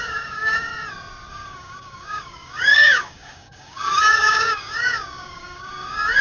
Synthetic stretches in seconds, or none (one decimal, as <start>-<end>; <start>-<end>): 0.0-0.7; 1.3-6.2